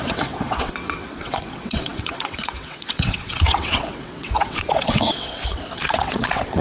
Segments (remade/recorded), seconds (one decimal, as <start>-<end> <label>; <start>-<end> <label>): 0.0-6.6 remade